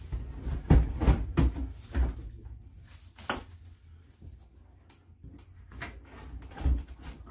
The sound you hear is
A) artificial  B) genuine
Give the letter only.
B